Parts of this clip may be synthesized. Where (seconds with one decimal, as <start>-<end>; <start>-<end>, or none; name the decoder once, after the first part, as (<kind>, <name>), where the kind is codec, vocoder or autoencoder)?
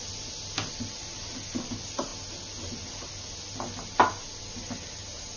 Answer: none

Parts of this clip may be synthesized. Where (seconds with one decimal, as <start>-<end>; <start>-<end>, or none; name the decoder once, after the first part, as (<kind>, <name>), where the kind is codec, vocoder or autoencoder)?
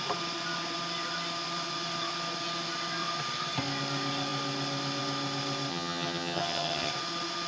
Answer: 5.7-6.9 (vocoder, HiFi-GAN)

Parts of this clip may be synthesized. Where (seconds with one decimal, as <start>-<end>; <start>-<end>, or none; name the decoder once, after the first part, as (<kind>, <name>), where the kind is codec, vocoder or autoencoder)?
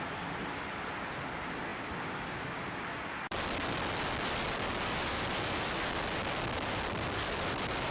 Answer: none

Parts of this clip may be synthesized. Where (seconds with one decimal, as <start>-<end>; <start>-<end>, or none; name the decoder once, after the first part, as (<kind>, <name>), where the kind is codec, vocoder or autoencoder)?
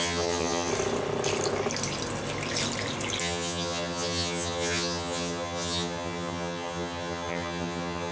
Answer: 0.0-0.7 (vocoder, HiFi-GAN); 3.2-8.1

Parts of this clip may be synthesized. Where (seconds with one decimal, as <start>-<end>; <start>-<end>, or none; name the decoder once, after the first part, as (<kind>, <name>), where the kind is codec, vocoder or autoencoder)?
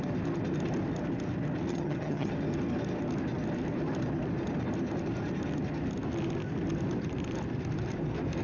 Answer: 1.7-2.3 (vocoder, HiFi-GAN)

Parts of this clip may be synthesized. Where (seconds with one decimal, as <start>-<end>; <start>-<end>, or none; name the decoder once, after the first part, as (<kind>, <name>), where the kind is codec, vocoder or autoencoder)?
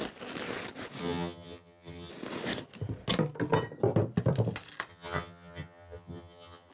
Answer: 1.0-2.1 (vocoder, HiFi-GAN); 4.9-6.7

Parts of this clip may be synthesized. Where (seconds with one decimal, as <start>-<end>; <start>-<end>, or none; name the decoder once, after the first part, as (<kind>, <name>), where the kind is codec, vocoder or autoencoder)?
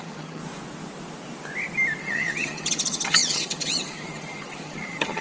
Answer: 0.0-0.4 (vocoder, HiFi-GAN); 2.0-5.2